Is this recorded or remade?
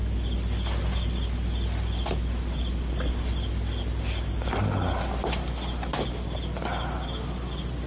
recorded